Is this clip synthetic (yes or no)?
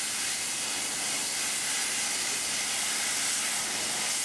no